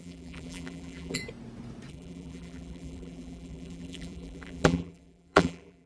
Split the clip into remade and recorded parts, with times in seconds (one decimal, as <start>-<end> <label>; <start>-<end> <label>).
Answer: 0.0-1.2 remade; 1.2-1.9 recorded; 1.9-5.9 remade